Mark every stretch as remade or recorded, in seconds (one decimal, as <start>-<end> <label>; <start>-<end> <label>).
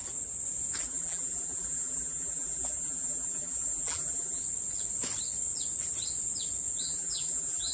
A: 0.0-0.8 recorded; 0.8-4.4 remade; 4.4-6.8 recorded; 6.8-7.7 remade